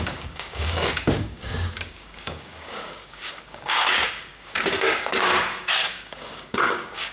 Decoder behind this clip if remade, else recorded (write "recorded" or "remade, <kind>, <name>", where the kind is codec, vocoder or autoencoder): remade, codec, DAC